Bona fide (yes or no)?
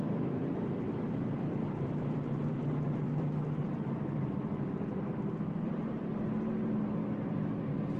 no